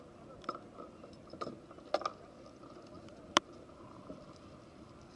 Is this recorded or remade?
recorded